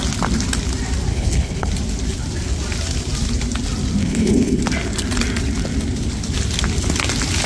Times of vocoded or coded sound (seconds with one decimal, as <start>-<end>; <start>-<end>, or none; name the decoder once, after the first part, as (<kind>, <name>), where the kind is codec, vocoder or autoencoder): 1.1-1.7 (codec, HILCodec); 4.0-4.6